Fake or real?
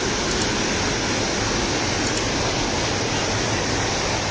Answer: real